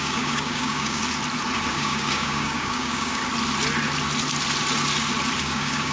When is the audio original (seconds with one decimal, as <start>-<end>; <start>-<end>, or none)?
1.0-1.7; 3.2-5.4